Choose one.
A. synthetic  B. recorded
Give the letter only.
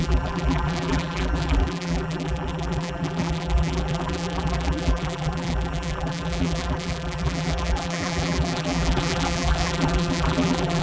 A